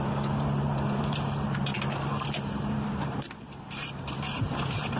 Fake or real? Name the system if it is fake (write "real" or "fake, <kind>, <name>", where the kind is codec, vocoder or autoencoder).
fake, vocoder, BigVGAN v2